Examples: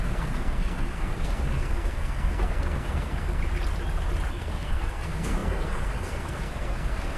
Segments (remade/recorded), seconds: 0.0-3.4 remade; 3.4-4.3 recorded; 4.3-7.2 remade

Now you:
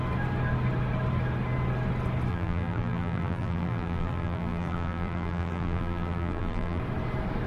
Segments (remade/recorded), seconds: 0.0-2.3 recorded; 2.3-6.8 remade; 6.8-7.5 recorded

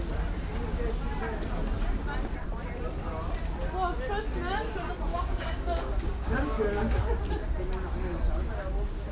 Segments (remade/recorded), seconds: 0.0-5.1 recorded; 5.1-7.2 remade; 7.2-9.1 recorded

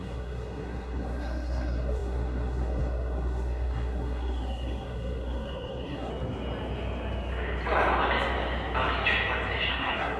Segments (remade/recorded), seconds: 0.0-6.1 remade; 6.1-9.7 recorded; 9.7-10.2 remade

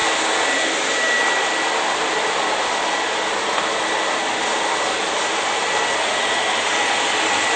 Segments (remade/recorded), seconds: 0.0-7.6 recorded

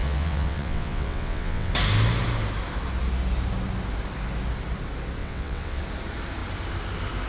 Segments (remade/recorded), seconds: 0.0-1.7 remade; 1.7-5.2 recorded; 5.2-5.8 remade; 5.8-7.3 recorded